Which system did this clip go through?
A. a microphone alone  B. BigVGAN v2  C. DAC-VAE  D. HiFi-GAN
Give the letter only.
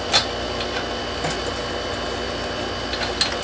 A